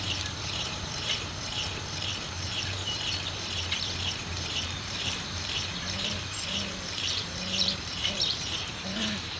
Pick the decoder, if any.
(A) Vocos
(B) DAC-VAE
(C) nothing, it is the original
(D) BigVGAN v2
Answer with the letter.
D